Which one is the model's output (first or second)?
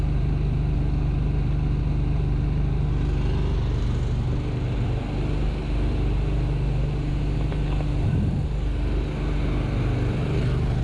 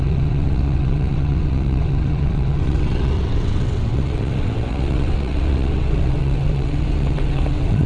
second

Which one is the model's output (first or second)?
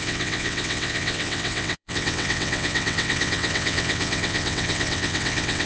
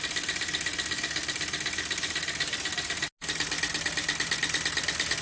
first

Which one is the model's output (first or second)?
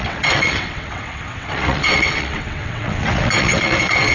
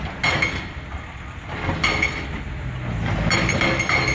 first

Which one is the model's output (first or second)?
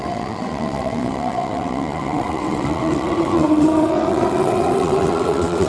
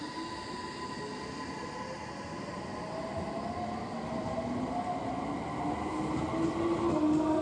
first